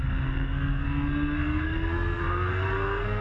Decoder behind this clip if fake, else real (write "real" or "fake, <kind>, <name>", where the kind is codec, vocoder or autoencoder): fake, codec, SNAC